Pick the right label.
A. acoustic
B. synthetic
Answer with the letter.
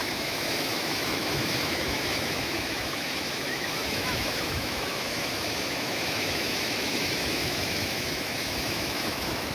B